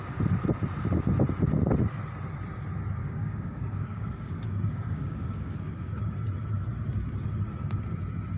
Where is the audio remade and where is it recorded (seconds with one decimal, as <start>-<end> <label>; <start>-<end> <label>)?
0.0-3.0 recorded; 3.0-6.0 remade; 6.0-8.4 recorded